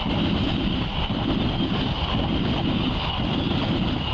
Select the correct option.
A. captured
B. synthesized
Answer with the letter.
A